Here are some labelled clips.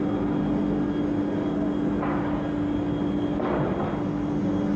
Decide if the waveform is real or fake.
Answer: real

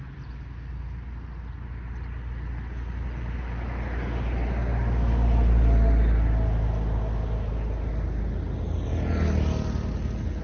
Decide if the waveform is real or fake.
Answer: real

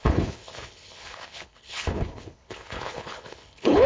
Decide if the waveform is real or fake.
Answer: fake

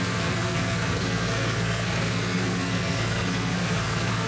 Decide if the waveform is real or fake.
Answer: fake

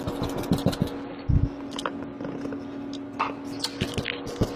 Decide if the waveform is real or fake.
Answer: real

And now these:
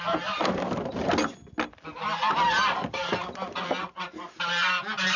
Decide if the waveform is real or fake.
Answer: real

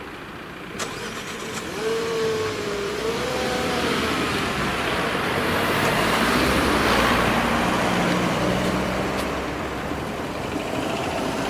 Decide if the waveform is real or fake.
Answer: fake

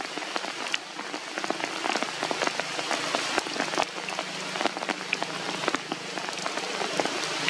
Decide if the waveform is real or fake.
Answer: real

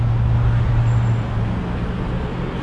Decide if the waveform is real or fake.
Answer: real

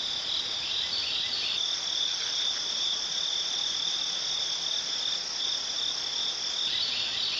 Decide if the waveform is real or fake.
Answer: real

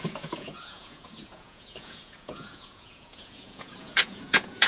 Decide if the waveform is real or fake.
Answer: fake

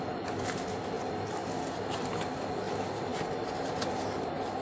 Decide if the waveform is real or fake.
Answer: real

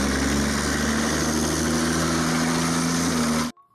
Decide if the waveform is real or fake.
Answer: real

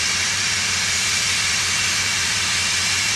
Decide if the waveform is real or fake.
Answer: fake